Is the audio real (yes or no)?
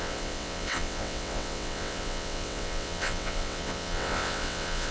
no